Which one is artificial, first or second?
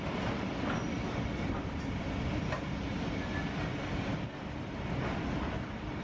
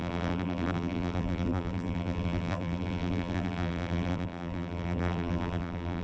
second